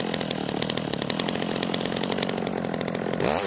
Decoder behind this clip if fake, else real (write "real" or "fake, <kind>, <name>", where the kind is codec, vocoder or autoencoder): real